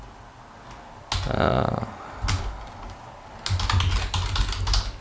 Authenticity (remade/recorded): recorded